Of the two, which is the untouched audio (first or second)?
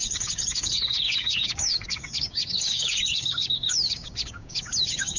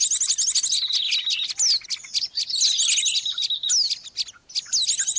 second